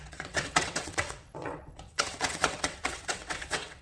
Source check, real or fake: fake